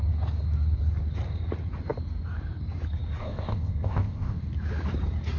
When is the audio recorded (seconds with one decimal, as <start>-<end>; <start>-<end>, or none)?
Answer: 0.0-3.2; 4.4-5.4